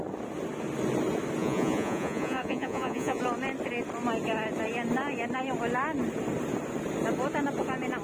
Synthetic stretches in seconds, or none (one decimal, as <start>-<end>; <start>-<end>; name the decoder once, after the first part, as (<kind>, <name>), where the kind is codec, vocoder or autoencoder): 1.4-3.2 (vocoder, Vocos)